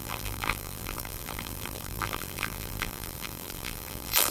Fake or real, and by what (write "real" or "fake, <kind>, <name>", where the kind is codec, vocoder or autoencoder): fake, vocoder, BigVGAN v2